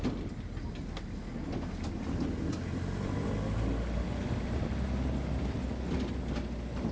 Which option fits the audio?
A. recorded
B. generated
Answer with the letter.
A